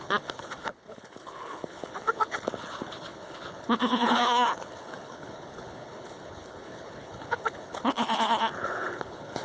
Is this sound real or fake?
fake